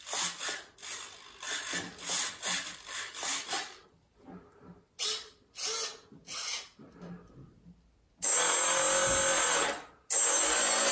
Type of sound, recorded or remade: recorded